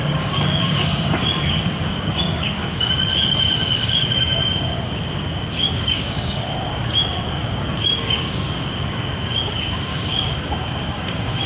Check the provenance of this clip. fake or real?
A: fake